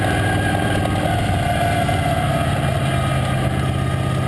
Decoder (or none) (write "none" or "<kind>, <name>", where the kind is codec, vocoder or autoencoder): none